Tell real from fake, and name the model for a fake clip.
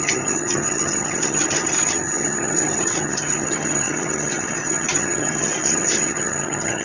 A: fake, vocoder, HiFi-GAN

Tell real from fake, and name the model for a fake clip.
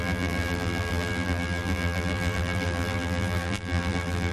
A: fake, vocoder, BigVGAN v2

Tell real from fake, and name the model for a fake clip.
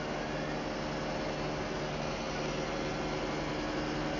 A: real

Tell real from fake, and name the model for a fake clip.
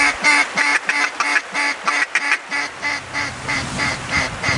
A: real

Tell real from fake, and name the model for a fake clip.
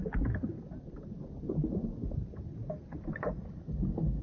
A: real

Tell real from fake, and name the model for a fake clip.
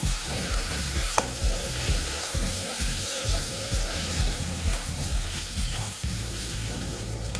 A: fake, codec, SNAC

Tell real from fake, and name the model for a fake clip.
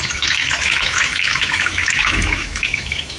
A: fake, autoencoder, DAC-VAE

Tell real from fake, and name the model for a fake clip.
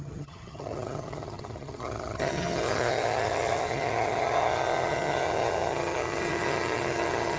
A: fake, vocoder, HiFi-GAN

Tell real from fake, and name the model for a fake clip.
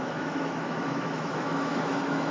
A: fake, autoencoder, DAC-VAE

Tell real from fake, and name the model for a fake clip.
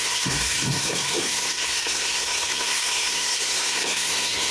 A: fake, codec, SNAC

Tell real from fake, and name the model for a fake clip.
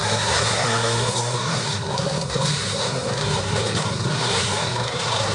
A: fake, codec, SNAC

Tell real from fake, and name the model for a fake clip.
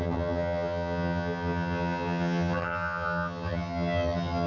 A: fake, vocoder, HiFi-GAN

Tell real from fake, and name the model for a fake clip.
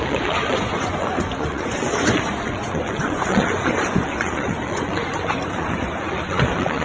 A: fake, vocoder, Vocos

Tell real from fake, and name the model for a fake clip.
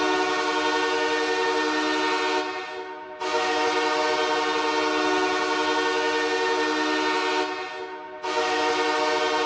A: real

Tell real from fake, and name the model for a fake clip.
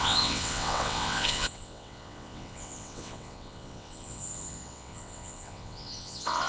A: fake, vocoder, WaveNeXt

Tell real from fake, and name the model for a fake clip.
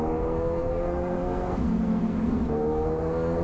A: fake, codec, SNAC